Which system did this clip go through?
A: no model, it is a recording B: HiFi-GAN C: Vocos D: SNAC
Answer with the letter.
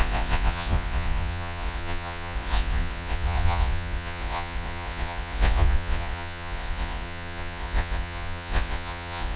C